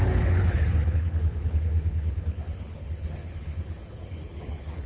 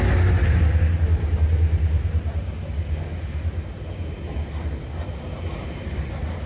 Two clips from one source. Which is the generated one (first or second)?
first